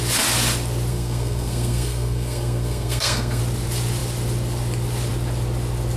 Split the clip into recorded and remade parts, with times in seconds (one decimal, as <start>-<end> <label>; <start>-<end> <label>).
0.0-0.9 recorded; 0.9-3.4 remade; 3.4-6.0 recorded